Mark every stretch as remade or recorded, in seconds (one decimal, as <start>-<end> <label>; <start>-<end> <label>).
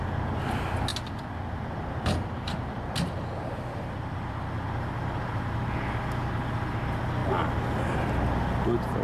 0.0-0.9 recorded; 0.9-4.3 remade; 4.3-9.0 recorded